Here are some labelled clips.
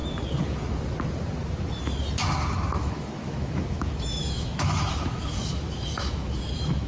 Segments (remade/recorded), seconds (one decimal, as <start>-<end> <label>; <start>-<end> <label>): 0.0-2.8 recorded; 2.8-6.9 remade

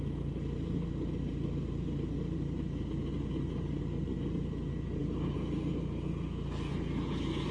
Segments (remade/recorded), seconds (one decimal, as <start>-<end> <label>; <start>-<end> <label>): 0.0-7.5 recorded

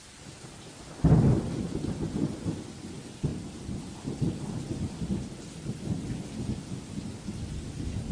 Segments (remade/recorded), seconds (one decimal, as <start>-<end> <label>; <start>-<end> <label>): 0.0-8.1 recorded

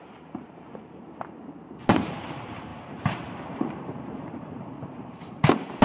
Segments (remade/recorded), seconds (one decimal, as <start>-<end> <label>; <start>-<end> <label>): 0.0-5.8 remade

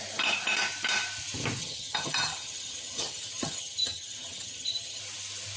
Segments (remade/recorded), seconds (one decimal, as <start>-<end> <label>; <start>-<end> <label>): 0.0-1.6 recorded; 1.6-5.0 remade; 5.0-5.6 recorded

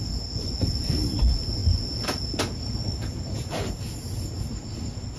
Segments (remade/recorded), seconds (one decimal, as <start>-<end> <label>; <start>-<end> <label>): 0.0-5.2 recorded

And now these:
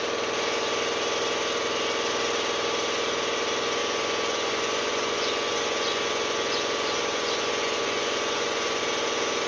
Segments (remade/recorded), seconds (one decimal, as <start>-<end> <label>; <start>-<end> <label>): 0.0-3.8 recorded; 3.8-8.8 remade; 8.8-9.5 recorded

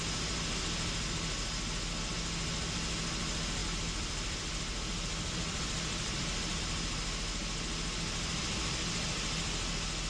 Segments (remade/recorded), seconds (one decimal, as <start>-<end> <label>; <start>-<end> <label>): 0.0-3.6 recorded; 3.6-6.6 remade; 6.6-10.1 recorded